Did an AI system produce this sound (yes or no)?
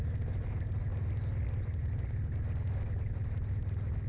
no